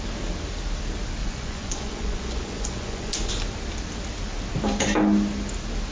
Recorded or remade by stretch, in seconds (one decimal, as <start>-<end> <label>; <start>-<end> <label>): 0.0-1.2 recorded; 1.2-3.3 remade; 3.3-5.9 recorded